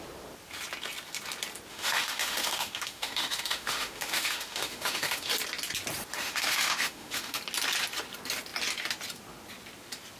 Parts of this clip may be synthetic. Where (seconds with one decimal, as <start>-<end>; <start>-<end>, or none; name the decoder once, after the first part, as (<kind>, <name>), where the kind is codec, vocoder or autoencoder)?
1.7-5.3 (autoencoder, DAC-VAE); 6.2-7.4